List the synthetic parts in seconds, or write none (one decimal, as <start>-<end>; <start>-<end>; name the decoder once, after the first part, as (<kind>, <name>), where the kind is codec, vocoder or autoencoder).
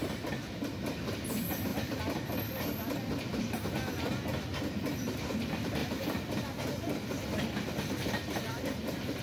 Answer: none